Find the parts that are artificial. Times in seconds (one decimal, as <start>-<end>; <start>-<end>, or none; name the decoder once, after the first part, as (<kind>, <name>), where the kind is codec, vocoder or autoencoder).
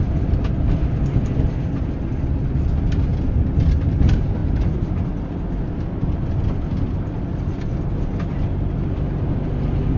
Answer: none